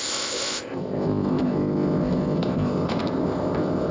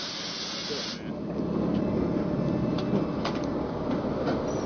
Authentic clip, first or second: second